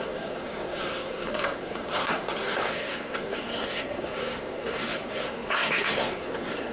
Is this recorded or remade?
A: remade